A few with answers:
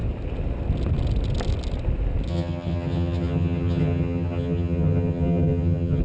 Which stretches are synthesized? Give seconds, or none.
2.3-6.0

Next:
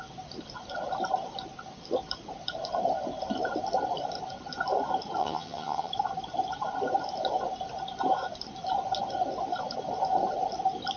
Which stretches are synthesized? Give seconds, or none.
5.2-5.9

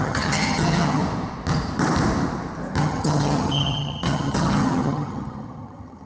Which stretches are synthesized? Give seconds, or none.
0.0-1.0; 2.8-6.1

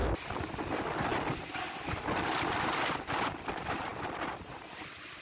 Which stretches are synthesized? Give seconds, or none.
none

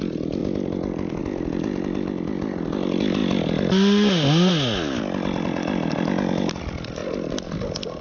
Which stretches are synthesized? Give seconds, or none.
none

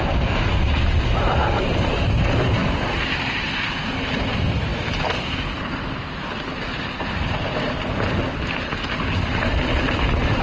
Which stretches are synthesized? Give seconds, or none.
none

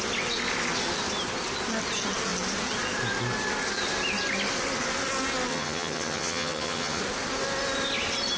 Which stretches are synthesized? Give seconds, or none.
5.5-7.0